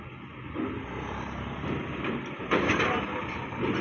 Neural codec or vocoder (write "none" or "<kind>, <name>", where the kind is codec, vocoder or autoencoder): none